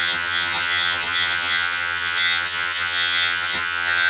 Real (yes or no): no